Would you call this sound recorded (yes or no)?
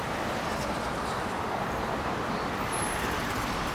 no